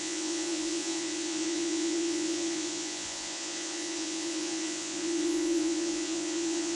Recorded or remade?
remade